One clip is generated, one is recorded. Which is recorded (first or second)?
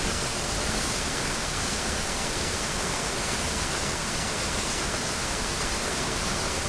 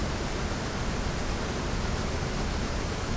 second